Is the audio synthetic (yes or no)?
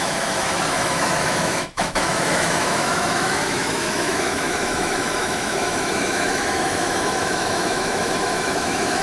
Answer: yes